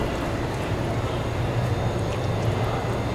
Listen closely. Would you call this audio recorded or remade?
recorded